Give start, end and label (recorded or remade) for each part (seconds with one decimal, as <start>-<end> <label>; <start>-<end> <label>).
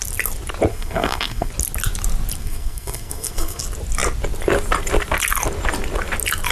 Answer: 0.0-0.7 recorded; 0.7-1.5 remade; 1.5-2.4 recorded; 2.4-3.6 remade; 3.6-6.5 recorded